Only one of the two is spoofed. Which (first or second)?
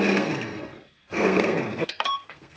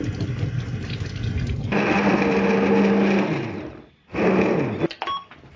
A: first